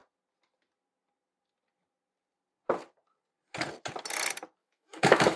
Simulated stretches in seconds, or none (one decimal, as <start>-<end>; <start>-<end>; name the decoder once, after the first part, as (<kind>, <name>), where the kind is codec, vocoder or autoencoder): 4.6-5.4 (autoencoder, DAC-VAE)